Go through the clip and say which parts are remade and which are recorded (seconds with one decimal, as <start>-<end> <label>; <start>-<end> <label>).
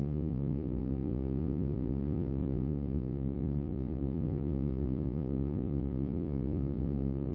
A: 0.0-7.3 remade